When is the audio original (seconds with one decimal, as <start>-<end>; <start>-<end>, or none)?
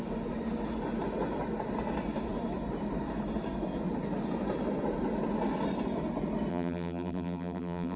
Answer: 0.0-6.5